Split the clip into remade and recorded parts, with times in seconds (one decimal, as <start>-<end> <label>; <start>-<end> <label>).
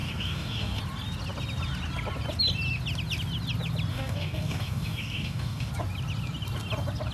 0.0-0.8 remade; 0.8-3.9 recorded; 3.9-5.7 remade; 5.7-7.1 recorded